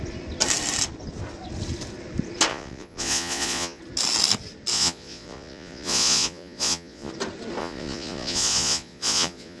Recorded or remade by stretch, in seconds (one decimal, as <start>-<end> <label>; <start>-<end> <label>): 0.0-2.5 recorded; 2.5-3.8 remade; 3.8-4.7 recorded; 4.7-7.1 remade; 7.1-7.6 recorded; 7.6-9.6 remade